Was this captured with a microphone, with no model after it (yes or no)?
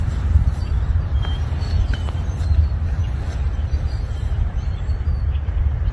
no